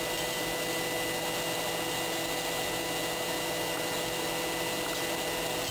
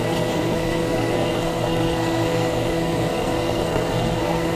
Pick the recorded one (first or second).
first